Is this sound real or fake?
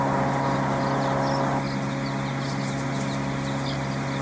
real